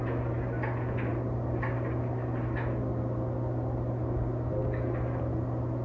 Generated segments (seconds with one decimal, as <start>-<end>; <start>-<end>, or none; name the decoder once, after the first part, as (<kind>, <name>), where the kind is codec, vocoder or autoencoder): none